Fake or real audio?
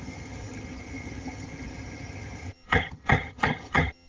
fake